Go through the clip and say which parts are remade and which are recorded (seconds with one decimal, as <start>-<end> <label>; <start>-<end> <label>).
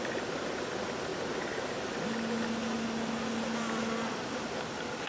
0.0-5.1 recorded